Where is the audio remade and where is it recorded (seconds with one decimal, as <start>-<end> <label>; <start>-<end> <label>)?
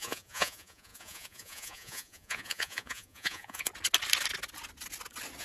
0.0-3.7 remade; 3.7-5.4 recorded